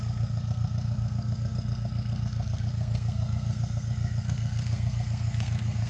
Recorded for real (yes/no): no